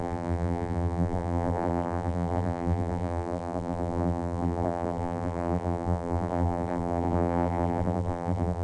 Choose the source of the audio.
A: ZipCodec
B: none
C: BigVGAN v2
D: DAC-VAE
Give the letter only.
C